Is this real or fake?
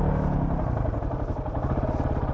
real